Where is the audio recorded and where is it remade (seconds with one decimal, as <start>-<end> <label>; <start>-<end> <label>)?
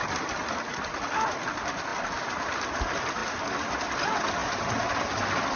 0.0-5.6 recorded